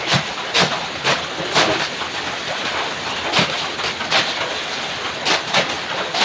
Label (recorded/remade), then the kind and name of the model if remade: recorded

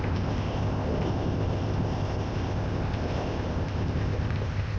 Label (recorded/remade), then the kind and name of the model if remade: remade, codec, ZipCodec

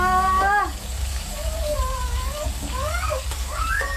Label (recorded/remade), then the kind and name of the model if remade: remade, codec, DAC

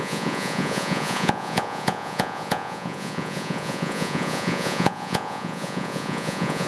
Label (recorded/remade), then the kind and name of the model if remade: remade, vocoder, Vocos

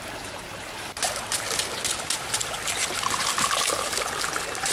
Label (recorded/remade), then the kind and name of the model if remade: recorded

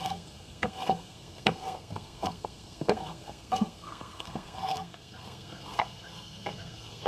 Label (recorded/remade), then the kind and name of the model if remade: remade, codec, SNAC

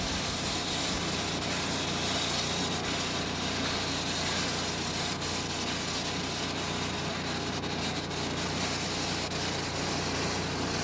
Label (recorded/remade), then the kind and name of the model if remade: recorded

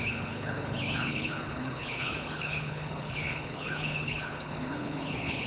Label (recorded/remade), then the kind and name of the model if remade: remade, codec, HILCodec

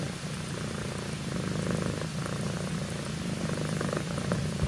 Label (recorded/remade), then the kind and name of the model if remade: recorded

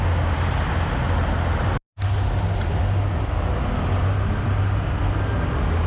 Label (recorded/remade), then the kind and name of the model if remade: recorded